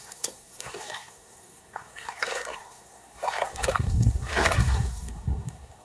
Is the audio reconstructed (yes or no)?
yes